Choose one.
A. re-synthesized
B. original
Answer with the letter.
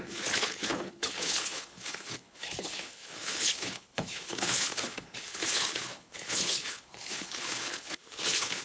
A